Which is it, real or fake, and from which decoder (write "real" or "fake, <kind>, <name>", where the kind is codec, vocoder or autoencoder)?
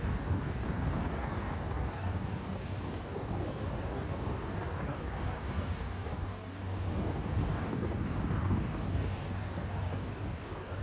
fake, codec, DAC